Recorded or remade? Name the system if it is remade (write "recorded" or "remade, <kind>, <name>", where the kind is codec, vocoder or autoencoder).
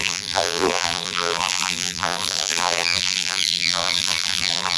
remade, vocoder, BigVGAN v2